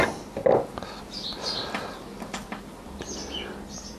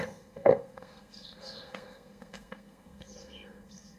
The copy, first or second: second